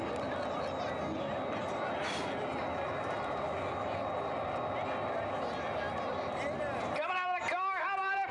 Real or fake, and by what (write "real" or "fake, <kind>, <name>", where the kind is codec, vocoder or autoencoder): real